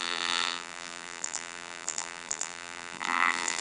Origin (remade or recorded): remade